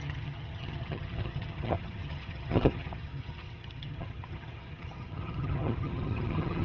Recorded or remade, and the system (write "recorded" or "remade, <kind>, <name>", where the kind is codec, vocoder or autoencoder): remade, vocoder, HiFi-GAN